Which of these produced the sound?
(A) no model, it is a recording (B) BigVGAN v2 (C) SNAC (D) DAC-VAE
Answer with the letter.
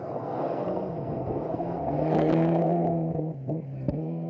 C